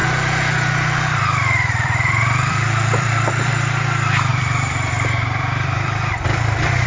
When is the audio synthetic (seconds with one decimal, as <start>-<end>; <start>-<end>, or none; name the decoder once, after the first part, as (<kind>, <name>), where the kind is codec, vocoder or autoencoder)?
0.0-3.5 (vocoder, BigVGAN v2); 4.3-6.2

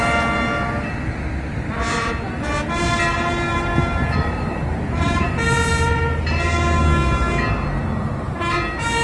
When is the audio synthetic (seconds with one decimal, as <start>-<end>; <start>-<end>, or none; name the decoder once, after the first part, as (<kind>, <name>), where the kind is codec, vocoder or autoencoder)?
3.5-5.3 (vocoder, BigVGAN v2)

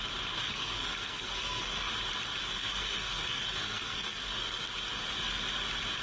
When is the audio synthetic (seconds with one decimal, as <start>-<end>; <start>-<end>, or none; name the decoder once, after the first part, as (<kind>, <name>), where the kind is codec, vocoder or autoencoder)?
0.4-1.9 (codec, SNAC); 2.4-4.7